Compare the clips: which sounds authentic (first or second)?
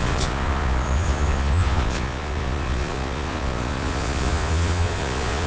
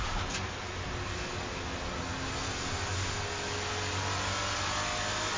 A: second